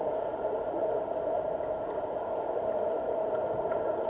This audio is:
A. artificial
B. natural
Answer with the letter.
B